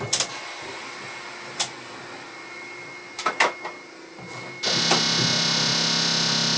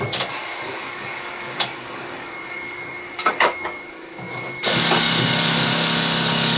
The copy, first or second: second